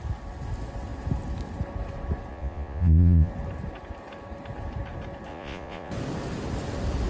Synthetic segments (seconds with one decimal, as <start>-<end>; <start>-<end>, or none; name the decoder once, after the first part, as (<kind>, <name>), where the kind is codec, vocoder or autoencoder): 2.3-3.3 (vocoder, Vocos); 5.3-5.9